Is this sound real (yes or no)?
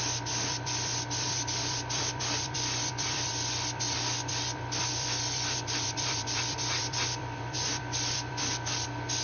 no